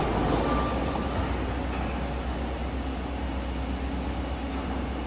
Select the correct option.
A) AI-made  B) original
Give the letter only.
B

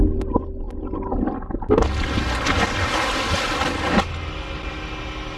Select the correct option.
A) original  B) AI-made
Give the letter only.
A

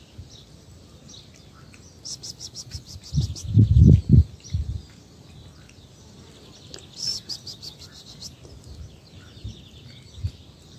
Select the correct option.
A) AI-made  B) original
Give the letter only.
B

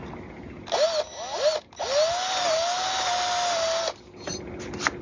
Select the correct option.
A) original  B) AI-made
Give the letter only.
A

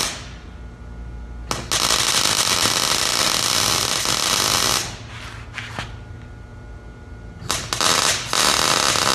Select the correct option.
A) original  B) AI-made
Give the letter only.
A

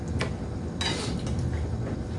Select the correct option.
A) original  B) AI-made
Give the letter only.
A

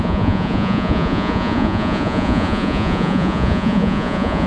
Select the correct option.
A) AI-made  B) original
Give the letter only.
A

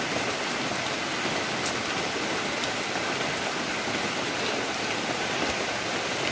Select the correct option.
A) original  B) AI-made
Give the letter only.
A